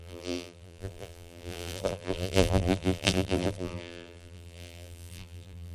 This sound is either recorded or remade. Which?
remade